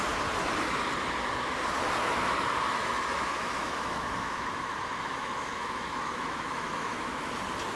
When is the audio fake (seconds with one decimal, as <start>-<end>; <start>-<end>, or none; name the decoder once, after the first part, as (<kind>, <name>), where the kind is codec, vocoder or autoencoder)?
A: 2.8-7.3 (autoencoder, DAC-VAE)